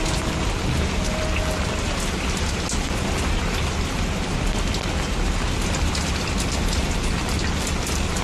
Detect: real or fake real